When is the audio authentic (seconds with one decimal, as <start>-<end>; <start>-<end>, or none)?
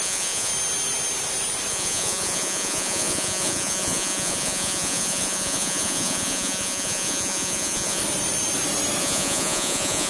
0.5-1.7; 8.0-9.0